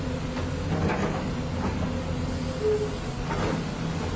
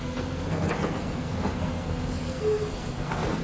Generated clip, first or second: second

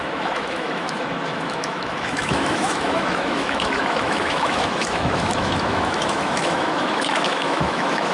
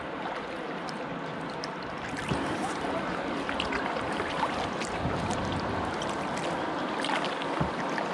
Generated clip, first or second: first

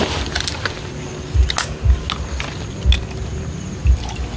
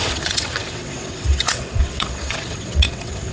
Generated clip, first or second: second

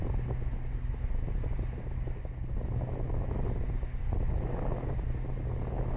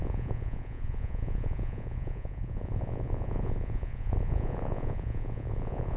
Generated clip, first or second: second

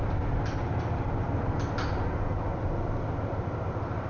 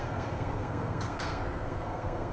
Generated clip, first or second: second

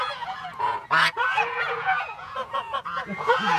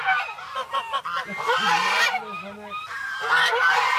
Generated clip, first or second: first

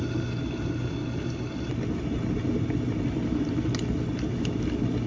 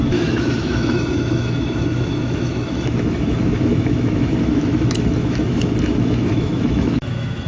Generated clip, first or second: second